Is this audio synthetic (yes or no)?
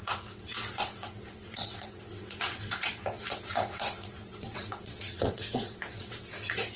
yes